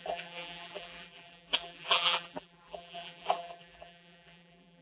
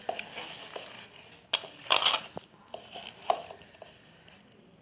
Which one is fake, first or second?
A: first